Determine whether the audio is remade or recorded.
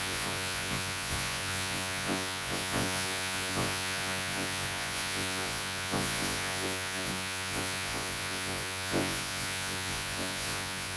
remade